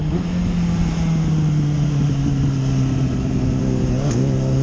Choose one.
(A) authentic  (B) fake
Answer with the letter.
A